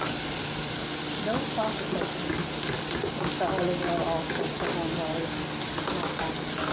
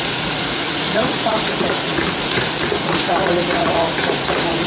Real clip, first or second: first